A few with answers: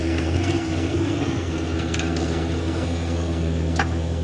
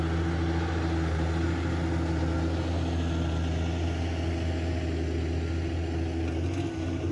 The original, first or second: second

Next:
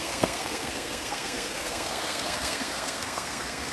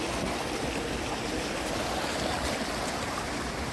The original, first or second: second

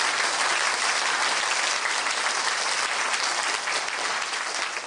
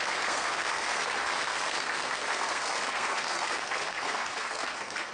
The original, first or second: first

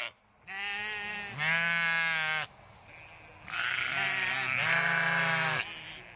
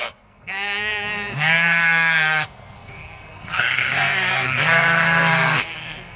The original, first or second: first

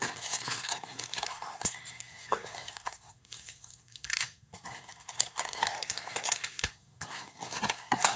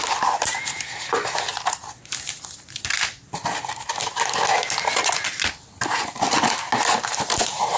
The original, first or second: second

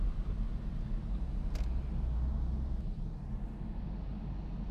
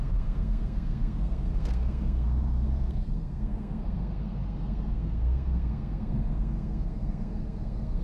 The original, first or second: first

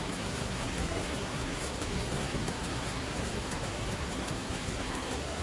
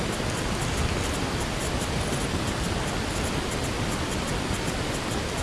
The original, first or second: second